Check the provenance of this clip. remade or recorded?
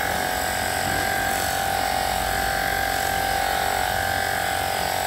recorded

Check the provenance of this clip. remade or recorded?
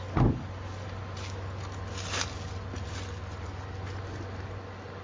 recorded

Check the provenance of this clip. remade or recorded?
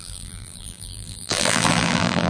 remade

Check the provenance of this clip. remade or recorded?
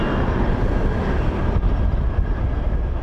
recorded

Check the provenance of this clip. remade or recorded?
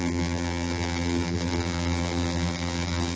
remade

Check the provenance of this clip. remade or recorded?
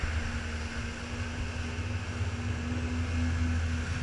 recorded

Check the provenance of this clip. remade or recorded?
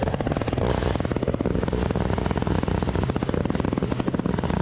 remade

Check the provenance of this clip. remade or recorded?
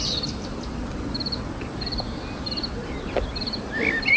remade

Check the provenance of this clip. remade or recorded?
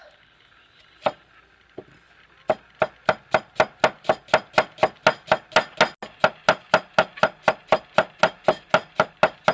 recorded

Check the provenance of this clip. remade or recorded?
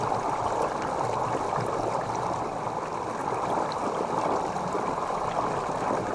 recorded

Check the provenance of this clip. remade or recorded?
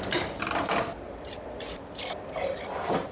remade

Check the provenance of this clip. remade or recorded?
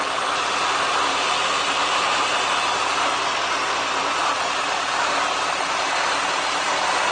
remade